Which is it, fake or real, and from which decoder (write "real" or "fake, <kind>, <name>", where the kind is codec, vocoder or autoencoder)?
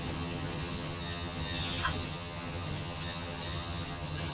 fake, vocoder, HiFi-GAN